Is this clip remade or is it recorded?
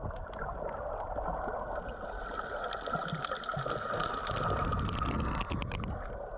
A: recorded